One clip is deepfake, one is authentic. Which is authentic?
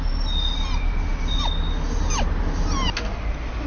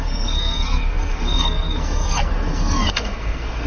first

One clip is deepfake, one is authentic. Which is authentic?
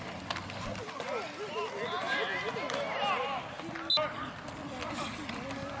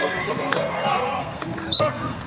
first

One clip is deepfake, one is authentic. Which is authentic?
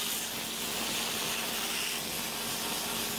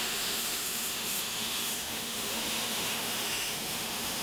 first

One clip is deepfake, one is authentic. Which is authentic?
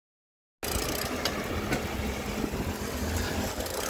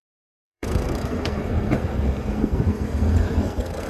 first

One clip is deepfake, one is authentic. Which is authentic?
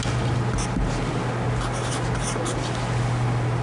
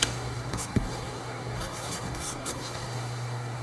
first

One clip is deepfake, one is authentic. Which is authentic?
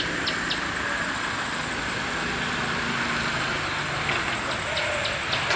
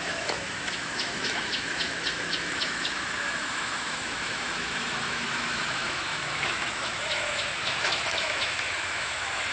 first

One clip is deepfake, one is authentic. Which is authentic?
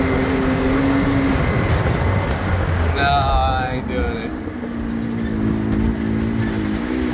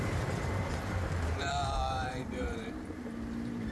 first